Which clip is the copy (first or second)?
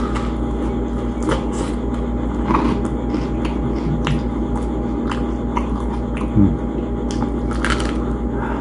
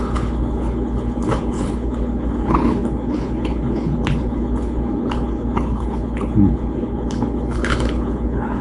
second